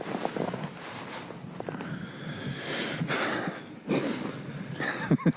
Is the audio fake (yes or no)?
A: no